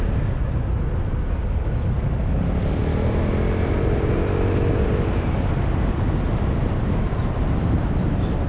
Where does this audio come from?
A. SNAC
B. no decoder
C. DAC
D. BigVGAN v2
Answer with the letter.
B